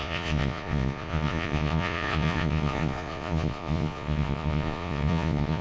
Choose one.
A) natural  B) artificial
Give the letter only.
B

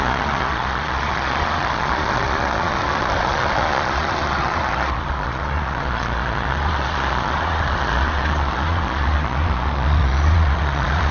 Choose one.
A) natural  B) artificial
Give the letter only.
B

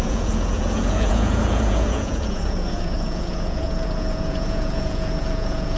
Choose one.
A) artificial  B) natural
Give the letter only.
A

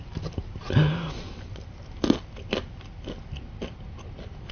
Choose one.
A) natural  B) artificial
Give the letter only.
A